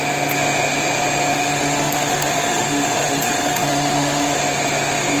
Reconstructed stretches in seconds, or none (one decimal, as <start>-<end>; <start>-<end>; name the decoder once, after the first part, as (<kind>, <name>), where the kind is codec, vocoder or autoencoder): 1.3-4.4 (autoencoder, DAC-VAE)